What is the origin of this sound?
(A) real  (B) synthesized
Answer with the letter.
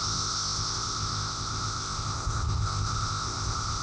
B